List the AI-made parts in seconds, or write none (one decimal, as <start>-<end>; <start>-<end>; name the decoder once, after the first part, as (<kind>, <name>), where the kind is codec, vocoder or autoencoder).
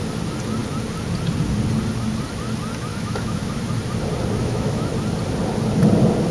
2.9-3.6 (autoencoder, DAC-VAE); 4.4-4.9